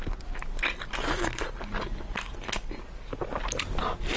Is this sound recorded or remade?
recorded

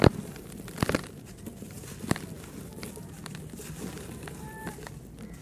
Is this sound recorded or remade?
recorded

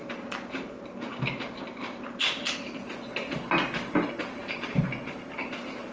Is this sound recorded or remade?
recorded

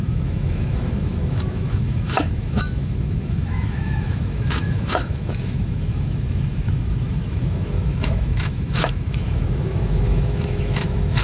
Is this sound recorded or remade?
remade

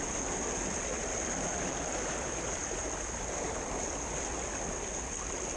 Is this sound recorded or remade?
recorded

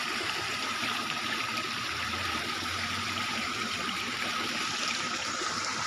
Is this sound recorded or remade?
remade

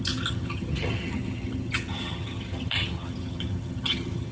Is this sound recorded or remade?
remade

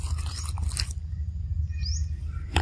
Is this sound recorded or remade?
recorded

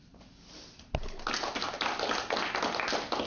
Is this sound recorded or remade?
recorded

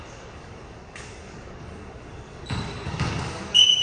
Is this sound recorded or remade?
remade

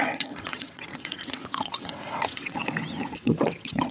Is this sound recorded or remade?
remade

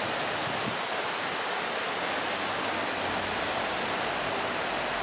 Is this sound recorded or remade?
recorded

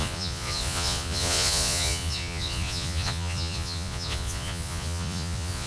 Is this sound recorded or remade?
remade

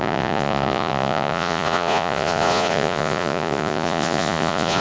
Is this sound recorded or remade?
remade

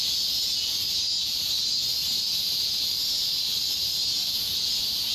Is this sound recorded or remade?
recorded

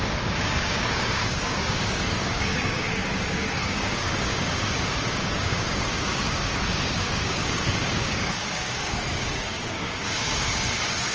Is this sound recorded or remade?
remade